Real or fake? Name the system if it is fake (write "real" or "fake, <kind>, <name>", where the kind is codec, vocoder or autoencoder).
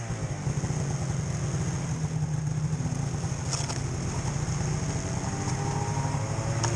real